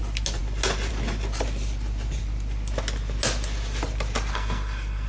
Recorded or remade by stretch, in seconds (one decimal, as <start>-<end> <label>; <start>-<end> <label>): 0.0-4.3 recorded; 4.3-5.1 remade